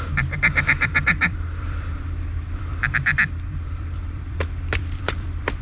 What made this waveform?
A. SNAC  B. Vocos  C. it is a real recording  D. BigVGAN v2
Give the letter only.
D